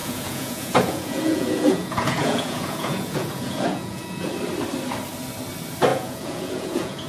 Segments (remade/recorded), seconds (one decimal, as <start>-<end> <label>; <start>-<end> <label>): 0.0-4.3 remade; 4.3-5.9 recorded; 5.9-7.1 remade